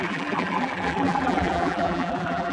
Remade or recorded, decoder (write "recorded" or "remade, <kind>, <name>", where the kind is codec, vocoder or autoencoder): remade, vocoder, BigVGAN v2